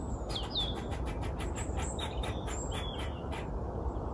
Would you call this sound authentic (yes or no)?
yes